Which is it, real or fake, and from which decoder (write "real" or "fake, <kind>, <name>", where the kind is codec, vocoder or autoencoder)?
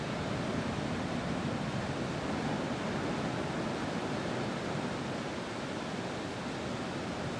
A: real